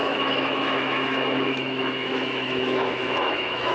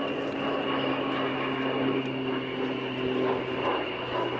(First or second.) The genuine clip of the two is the second